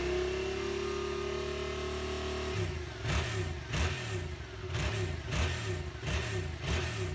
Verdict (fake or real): real